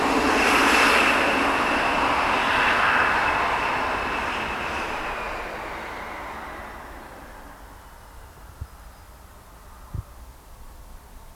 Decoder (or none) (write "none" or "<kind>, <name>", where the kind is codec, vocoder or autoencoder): none